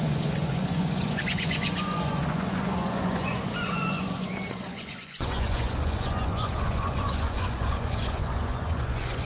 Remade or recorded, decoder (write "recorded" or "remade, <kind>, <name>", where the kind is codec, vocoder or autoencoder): remade, vocoder, Vocos